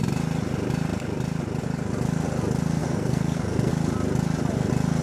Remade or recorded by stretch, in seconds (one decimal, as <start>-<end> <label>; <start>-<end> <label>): 0.0-2.8 recorded; 2.8-3.7 remade; 3.7-5.0 recorded